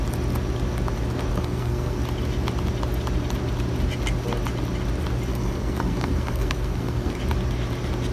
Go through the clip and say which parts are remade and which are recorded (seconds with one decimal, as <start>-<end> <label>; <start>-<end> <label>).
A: 0.0-1.3 recorded; 1.3-2.0 remade; 2.0-5.3 recorded; 5.3-7.2 remade; 7.2-8.1 recorded